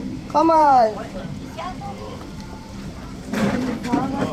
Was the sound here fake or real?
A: fake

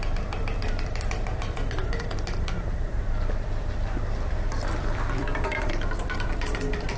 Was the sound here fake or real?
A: fake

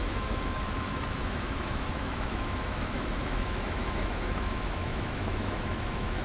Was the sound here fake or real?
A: fake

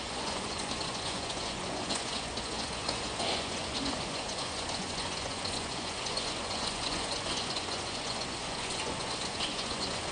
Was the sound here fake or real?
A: fake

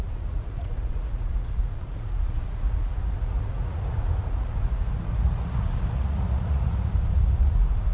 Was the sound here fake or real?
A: fake